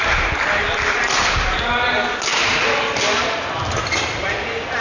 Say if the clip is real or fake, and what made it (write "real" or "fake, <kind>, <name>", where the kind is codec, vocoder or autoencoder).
real